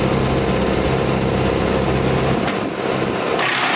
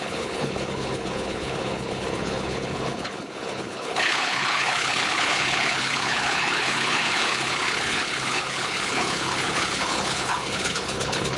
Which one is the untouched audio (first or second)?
first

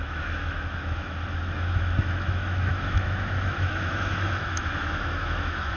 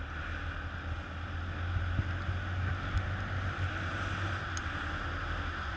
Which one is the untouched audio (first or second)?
second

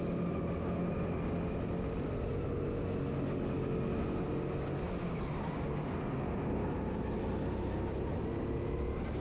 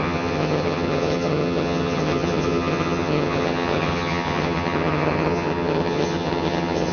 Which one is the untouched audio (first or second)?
first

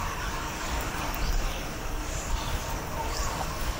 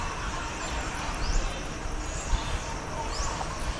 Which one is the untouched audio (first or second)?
second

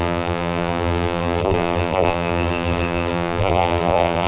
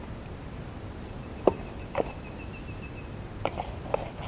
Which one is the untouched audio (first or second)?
second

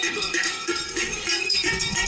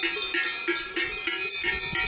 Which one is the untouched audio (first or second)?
second